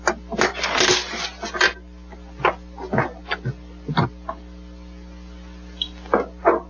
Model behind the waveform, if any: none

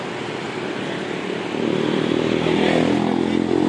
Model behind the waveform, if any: none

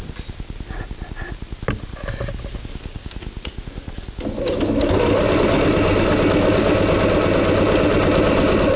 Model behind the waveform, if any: none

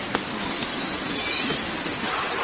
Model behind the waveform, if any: none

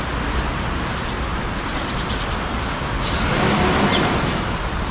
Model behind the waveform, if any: none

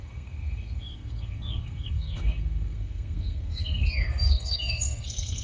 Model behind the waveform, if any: codec, SNAC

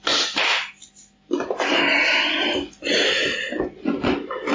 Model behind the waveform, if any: none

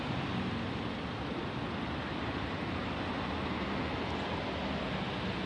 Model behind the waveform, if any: none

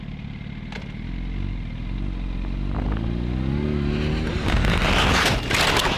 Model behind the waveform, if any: none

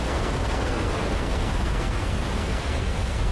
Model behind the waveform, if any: codec, SNAC